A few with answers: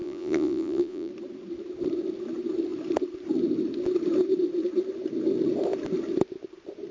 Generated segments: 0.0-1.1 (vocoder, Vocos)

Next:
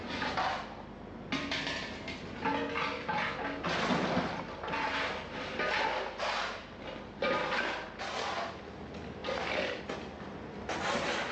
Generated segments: none

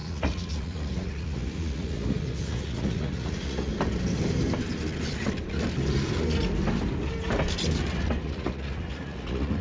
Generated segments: 0.0-3.7 (vocoder, Vocos); 8.2-9.6

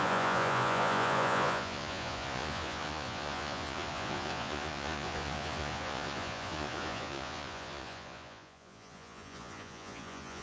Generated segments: 0.0-10.4 (vocoder, Vocos)

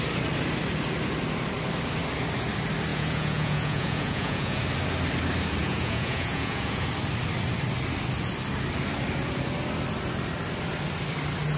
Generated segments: 2.9-4.6 (vocoder, Vocos); 5.6-6.9

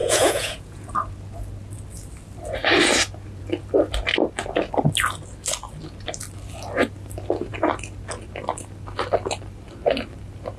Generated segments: 0.0-0.9 (vocoder, Vocos)